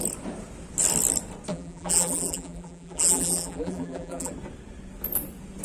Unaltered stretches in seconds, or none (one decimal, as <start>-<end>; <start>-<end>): 0.0-1.5; 4.3-5.6